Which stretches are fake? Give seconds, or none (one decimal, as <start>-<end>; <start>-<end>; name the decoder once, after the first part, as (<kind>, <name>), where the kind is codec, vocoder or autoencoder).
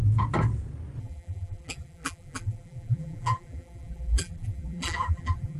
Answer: 1.0-5.6 (vocoder, BigVGAN v2)